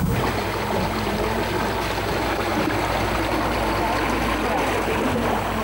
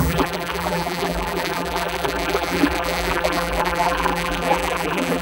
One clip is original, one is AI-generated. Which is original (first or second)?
first